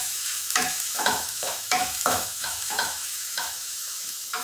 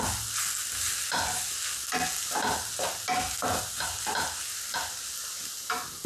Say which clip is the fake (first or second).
first